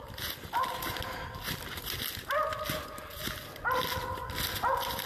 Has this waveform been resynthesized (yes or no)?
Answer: no